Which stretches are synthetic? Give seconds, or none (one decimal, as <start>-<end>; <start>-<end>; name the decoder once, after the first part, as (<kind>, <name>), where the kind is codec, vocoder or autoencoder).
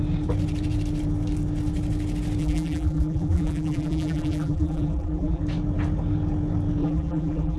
2.4-5.4 (vocoder, BigVGAN v2); 6.8-7.6